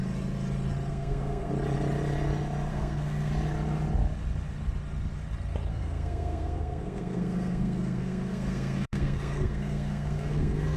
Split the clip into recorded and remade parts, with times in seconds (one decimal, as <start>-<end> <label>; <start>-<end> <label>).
0.0-0.9 recorded; 0.9-1.5 remade; 1.5-2.7 recorded; 2.7-3.3 remade; 3.3-5.7 recorded; 5.7-10.8 remade

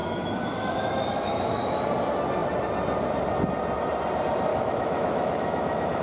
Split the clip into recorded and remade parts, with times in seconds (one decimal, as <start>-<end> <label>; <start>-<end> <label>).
0.0-1.8 remade; 1.8-4.5 recorded; 4.5-6.0 remade

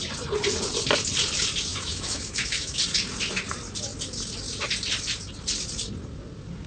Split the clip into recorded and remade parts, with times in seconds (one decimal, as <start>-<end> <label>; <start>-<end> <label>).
0.0-1.7 recorded; 1.7-2.8 remade; 2.8-6.7 recorded

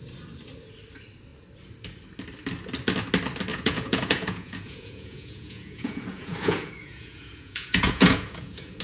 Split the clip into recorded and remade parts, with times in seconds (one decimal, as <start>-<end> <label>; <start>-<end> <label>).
0.0-3.5 recorded; 3.5-8.8 remade

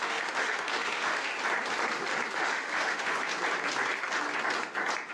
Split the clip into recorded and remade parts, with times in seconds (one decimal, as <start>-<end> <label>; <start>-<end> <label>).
0.0-1.3 remade; 1.3-2.3 recorded; 2.3-3.3 remade; 3.3-5.1 recorded

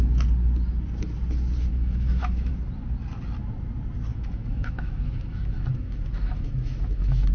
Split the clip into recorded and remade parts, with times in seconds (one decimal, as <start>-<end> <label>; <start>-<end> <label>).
0.0-1.7 recorded; 1.7-2.5 remade; 2.5-4.1 recorded; 4.1-7.3 remade

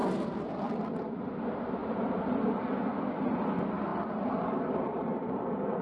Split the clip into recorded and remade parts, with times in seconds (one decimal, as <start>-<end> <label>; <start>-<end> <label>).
0.0-0.8 remade; 0.8-1.8 recorded; 1.8-2.6 remade; 2.6-3.9 recorded; 3.9-5.8 remade

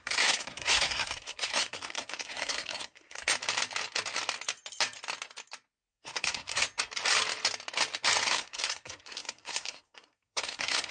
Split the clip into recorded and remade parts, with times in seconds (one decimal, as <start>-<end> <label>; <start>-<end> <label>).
0.0-3.2 remade; 3.2-5.9 recorded; 5.9-6.6 remade; 6.6-8.3 recorded; 8.3-10.9 remade